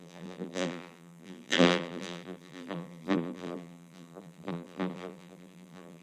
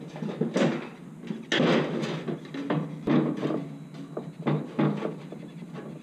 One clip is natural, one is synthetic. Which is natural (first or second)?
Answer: second